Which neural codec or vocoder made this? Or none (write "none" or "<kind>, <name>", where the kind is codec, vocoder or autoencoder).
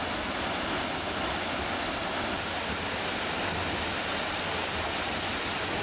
none